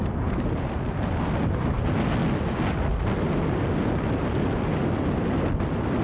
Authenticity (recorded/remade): recorded